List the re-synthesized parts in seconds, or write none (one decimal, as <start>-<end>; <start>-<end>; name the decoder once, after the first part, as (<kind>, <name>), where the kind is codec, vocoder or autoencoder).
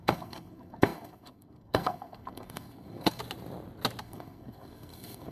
0.0-3.2 (codec, SNAC); 4.0-5.3